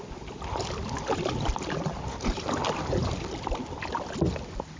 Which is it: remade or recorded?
recorded